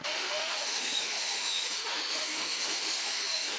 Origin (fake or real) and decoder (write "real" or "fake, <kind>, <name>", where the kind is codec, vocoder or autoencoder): fake, autoencoder, DAC-VAE